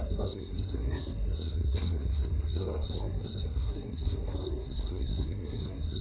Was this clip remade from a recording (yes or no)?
yes